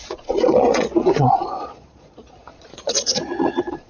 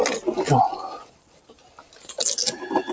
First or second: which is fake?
first